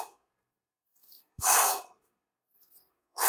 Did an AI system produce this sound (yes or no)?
yes